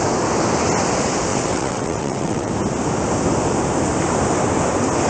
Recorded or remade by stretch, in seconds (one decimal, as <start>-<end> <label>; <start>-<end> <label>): 0.0-1.3 recorded; 1.3-2.5 remade; 2.5-5.1 recorded